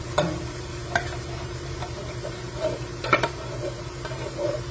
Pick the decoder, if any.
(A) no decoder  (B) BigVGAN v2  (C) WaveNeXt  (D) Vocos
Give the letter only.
B